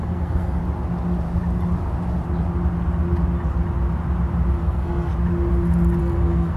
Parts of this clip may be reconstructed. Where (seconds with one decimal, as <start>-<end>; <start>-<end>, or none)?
0.0-0.6; 4.6-5.1; 6.0-6.6